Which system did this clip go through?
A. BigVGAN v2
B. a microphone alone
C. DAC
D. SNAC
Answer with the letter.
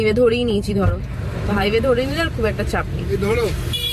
A